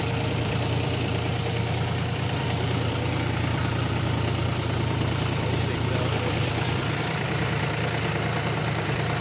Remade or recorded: remade